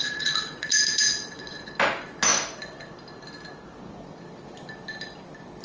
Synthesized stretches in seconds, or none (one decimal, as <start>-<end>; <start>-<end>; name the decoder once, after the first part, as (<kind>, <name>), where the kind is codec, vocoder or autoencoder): 0.0-1.7 (vocoder, Vocos)